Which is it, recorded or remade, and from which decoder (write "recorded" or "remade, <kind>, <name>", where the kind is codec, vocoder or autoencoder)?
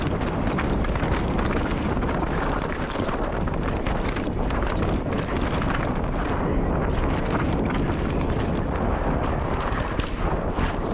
recorded